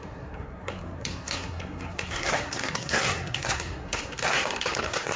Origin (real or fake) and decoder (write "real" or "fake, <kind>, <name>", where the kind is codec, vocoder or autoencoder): fake, codec, SNAC